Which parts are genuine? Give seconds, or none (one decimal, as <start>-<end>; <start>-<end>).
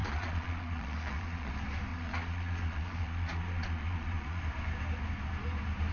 1.5-1.9; 4.4-5.9